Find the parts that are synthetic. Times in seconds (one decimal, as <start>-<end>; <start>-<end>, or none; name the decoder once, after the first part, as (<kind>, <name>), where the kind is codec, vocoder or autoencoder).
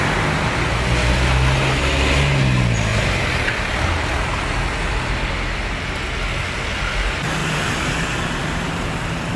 2.9-3.5 (vocoder, BigVGAN v2); 7.4-9.0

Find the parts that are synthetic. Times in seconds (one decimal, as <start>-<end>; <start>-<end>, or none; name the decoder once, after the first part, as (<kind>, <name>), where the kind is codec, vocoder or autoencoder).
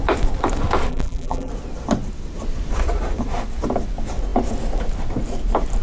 0.9-1.5 (vocoder, BigVGAN v2)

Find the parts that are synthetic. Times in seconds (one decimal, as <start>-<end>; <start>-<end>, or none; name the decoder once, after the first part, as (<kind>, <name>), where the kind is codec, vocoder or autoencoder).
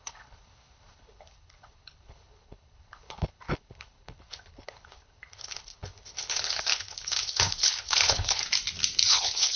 0.0-8.4 (codec, HILCodec); 9.1-9.6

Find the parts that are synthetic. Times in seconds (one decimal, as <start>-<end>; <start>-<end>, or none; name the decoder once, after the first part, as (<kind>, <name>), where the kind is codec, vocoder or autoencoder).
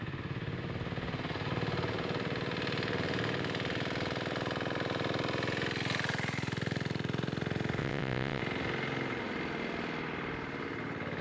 7.8-8.4 (vocoder, WaveNeXt)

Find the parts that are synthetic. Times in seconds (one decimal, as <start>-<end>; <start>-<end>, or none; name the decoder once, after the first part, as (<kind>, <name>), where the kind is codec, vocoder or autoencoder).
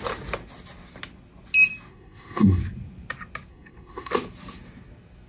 1.9-2.6 (codec, SNAC); 3.5-4.1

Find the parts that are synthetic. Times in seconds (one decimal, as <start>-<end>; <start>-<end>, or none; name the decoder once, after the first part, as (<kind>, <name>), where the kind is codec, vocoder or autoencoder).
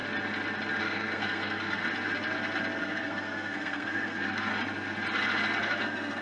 0.8-1.8 (codec, SNAC); 2.8-4.5; 5.6-6.2